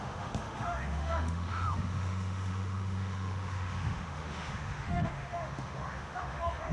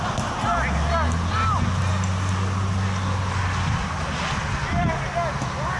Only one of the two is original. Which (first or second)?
second